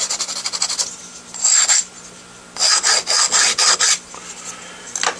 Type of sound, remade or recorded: recorded